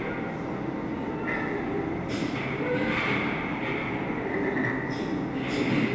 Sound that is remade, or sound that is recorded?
recorded